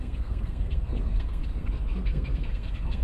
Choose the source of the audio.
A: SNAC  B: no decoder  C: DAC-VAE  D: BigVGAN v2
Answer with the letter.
A